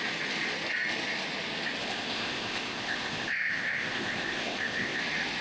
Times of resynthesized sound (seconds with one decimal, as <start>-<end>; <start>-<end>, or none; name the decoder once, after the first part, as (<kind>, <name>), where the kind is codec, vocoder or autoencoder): 1.8-5.0 (codec, ZipCodec)